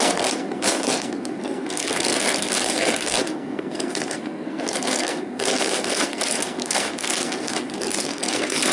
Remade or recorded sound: remade